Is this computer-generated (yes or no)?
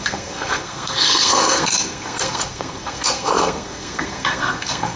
yes